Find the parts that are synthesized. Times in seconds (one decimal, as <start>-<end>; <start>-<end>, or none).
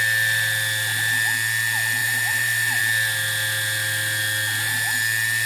2.0-2.8